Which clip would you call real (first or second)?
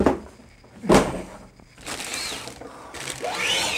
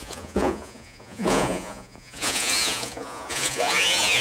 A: first